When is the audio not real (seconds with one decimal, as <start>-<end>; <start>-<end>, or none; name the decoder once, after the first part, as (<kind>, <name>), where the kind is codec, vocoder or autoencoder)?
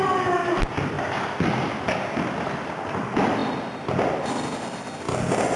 none